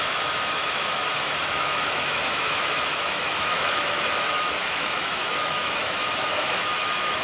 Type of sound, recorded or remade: remade